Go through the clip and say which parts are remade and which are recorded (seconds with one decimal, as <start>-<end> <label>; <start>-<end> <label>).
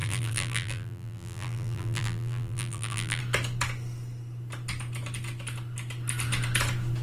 0.0-3.2 remade; 3.2-7.0 recorded